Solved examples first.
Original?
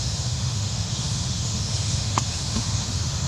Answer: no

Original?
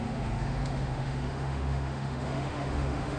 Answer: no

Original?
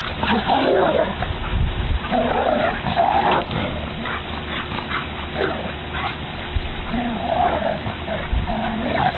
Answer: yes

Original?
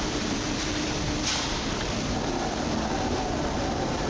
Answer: no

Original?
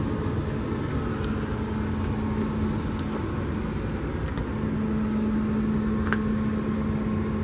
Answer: yes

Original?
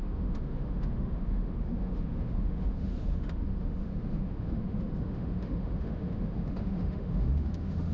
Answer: no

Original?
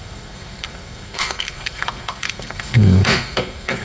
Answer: no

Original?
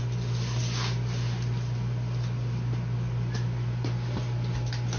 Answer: yes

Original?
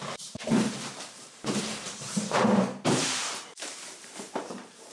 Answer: no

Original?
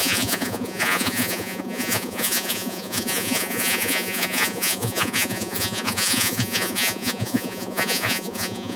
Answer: no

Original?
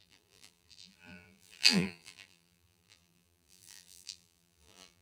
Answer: no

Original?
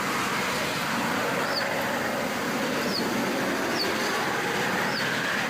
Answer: yes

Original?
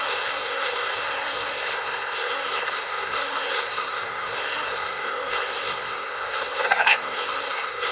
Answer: no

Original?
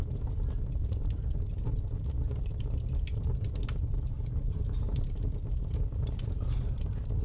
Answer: yes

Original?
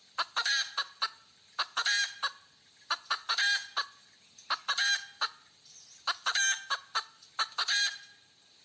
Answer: yes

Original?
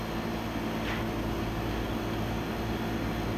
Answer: yes